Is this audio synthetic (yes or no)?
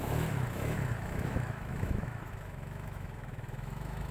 yes